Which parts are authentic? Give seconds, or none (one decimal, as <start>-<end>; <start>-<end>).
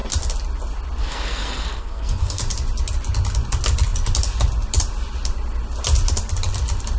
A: 0.0-1.0; 2.4-7.0